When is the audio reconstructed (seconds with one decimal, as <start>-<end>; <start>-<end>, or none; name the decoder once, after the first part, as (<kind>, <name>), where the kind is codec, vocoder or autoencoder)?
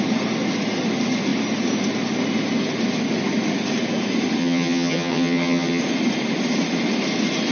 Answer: 4.4-5.8 (vocoder, HiFi-GAN)